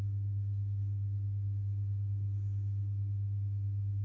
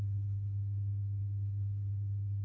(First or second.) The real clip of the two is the first